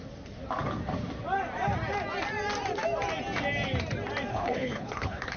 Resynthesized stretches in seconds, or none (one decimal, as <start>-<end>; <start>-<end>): 4.3-5.4